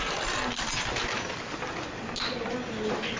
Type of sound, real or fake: real